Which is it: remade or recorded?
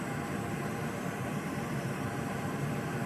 remade